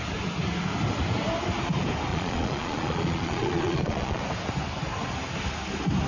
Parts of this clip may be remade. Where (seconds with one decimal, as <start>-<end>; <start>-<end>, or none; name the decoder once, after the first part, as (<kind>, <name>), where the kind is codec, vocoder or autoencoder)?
2.1-4.2 (vocoder, Vocos)